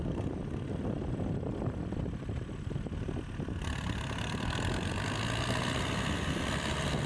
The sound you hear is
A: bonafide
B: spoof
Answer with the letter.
A